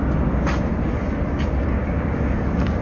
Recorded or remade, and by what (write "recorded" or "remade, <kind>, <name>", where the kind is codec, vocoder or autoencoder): recorded